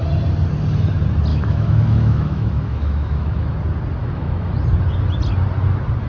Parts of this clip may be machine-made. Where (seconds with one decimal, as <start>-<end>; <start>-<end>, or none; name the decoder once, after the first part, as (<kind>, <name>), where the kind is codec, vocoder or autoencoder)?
1.3-3.6 (autoencoder, DAC-VAE); 4.0-4.5